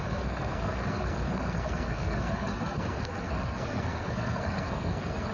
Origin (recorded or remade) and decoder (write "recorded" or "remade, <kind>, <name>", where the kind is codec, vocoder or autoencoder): remade, codec, SNAC